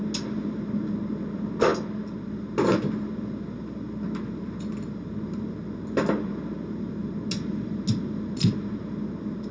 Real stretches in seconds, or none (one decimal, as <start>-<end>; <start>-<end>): 0.0-9.5